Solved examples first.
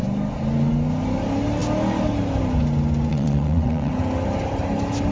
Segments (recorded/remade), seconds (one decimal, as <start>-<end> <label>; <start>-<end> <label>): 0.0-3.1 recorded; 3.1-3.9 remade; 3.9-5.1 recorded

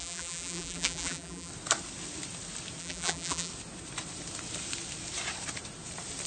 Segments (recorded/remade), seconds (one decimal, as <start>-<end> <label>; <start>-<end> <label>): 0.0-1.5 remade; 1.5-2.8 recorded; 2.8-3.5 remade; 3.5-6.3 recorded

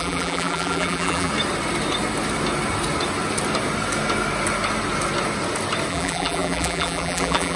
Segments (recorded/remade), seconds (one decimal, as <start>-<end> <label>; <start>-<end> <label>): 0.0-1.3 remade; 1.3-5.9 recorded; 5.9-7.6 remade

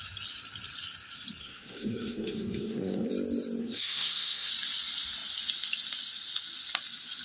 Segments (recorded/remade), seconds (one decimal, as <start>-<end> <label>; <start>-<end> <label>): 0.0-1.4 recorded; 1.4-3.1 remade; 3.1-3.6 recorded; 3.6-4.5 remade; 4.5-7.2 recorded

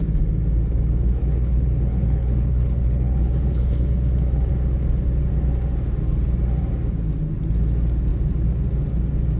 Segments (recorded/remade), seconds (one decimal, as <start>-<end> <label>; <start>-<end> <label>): 0.0-1.2 recorded; 1.2-4.5 remade; 4.5-9.4 recorded